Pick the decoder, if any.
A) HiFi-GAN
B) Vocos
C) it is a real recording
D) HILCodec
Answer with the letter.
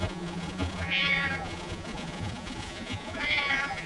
B